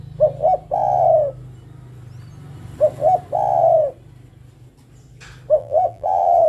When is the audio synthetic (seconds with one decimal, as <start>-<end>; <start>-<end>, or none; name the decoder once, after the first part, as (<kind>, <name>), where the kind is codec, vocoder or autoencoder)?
5.6-6.5 (vocoder, BigVGAN v2)